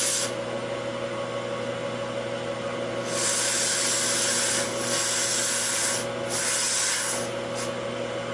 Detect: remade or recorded recorded